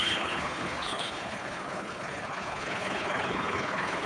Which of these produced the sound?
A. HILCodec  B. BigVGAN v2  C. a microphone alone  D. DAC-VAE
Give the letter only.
A